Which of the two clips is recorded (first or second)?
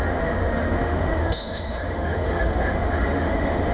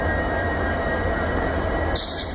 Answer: second